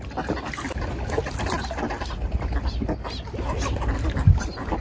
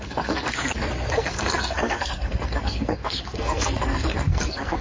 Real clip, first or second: first